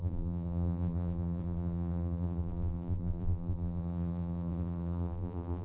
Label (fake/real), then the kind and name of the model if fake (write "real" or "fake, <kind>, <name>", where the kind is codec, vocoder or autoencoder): fake, vocoder, BigVGAN v2